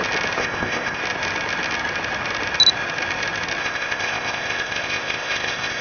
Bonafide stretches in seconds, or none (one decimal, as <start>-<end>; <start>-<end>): 0.0-0.4; 1.0-3.6